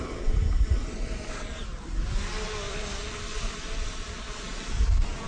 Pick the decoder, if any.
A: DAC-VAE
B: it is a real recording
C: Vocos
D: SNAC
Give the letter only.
B